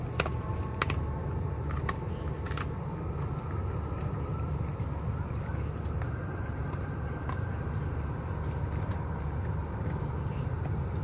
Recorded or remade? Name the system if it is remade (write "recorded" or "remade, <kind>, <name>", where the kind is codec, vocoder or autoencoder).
recorded